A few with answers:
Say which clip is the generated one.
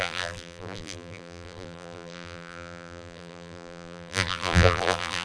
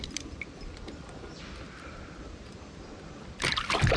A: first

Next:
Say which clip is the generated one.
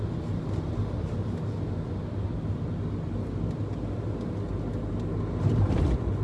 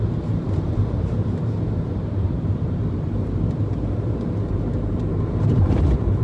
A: second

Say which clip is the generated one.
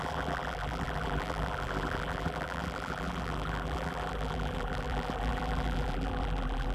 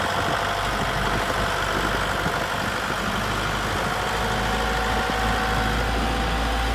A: first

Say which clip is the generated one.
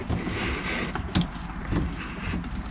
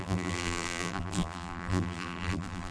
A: second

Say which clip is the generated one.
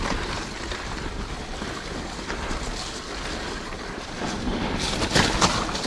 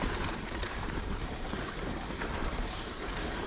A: second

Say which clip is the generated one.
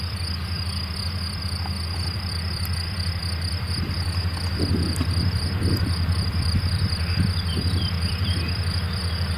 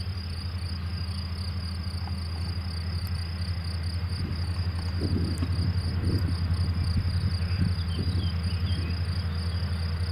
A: first